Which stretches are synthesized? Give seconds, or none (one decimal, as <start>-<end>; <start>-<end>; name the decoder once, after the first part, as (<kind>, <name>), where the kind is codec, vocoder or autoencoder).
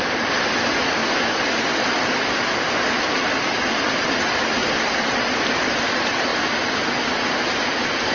none